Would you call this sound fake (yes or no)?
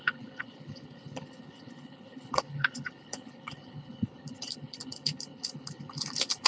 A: yes